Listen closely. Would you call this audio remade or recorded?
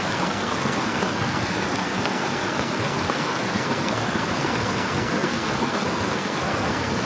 remade